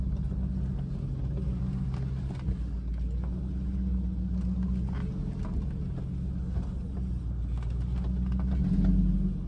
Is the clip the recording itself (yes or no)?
yes